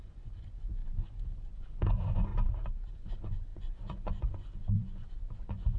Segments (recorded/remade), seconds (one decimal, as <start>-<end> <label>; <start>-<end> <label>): 0.0-2.3 remade; 2.3-2.9 recorded; 2.9-5.8 remade